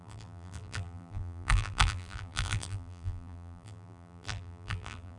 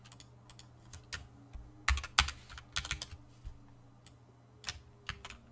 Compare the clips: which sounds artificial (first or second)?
first